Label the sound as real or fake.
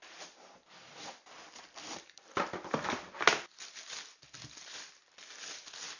real